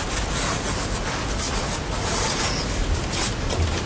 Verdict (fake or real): real